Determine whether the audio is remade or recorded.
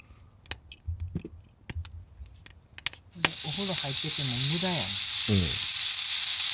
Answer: recorded